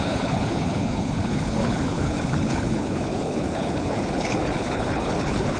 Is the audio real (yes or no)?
no